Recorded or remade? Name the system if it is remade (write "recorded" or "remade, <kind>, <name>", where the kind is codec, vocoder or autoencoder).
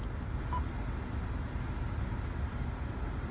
recorded